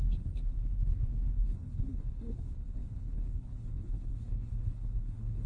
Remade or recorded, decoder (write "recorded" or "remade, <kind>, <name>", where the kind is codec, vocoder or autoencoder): remade, codec, HILCodec